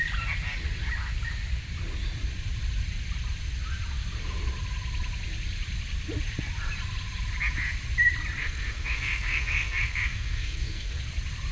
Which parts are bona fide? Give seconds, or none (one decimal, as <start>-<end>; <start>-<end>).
0.0-8.4; 11.0-11.5